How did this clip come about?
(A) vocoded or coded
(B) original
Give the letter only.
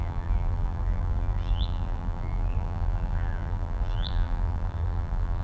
A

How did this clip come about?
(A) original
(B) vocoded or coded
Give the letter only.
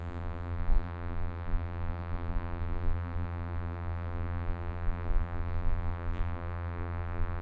B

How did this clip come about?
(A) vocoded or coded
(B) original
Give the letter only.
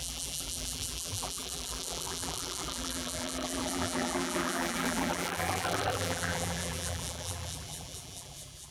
A